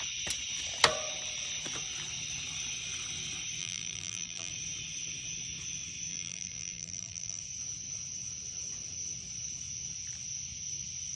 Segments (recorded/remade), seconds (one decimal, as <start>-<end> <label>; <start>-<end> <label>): 0.0-3.6 recorded; 3.6-4.5 remade; 4.5-6.1 recorded; 6.1-7.4 remade; 7.4-11.2 recorded